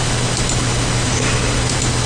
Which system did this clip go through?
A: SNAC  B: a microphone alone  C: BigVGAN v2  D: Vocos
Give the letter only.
B